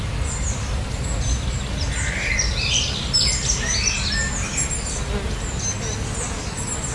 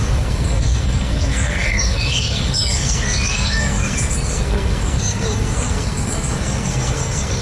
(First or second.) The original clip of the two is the first